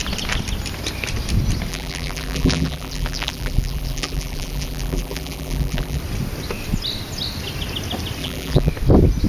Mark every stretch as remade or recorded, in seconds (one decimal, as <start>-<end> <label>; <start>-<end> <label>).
0.0-1.7 recorded; 1.7-6.0 remade; 6.0-8.2 recorded; 8.2-8.7 remade; 8.7-9.3 recorded